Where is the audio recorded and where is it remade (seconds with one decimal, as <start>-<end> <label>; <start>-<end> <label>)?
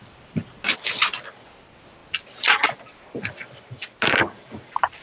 0.0-5.0 recorded